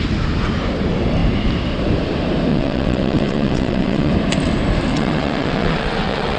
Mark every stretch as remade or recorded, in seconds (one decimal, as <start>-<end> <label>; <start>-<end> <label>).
0.0-2.5 recorded; 2.5-4.1 remade; 4.1-4.9 recorded; 4.9-6.4 remade